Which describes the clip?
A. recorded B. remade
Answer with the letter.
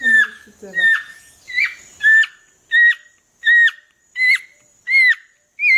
A